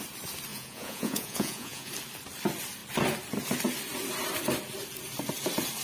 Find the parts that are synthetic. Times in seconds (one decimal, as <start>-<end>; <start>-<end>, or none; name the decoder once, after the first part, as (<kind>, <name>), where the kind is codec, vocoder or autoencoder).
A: 0.5-1.9 (vocoder, Vocos)